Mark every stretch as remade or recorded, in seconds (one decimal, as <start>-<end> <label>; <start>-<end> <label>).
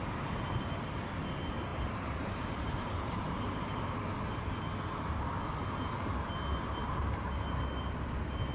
0.0-1.7 recorded; 1.7-4.0 remade; 4.0-6.8 recorded; 6.8-7.6 remade; 7.6-8.5 recorded